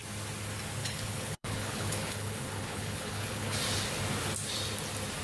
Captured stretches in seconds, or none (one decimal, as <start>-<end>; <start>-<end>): 0.0-0.8; 3.6-5.2